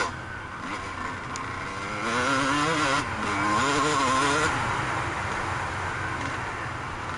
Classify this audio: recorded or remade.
recorded